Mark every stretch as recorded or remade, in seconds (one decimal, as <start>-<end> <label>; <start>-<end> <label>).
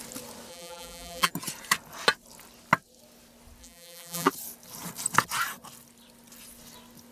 0.0-0.5 recorded; 0.5-1.3 remade; 1.3-3.6 recorded; 3.6-4.3 remade; 4.3-7.1 recorded